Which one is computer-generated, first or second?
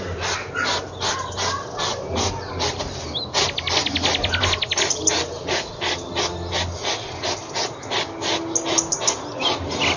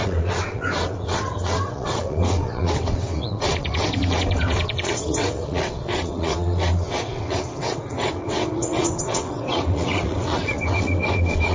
second